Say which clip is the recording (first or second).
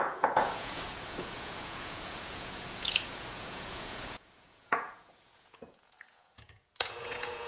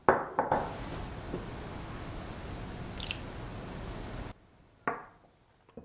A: second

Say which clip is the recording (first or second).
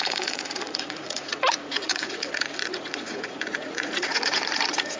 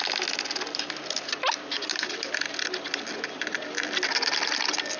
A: second